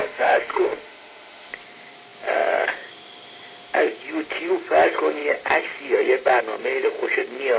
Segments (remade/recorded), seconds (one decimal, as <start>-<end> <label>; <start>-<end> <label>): 0.0-1.5 remade; 1.5-7.6 recorded